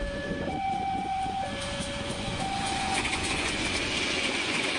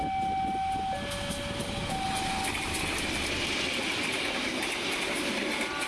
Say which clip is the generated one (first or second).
first